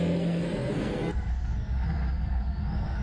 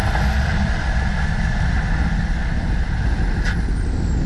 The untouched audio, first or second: second